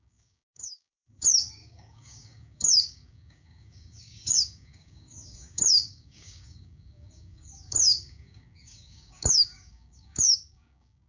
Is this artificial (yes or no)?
yes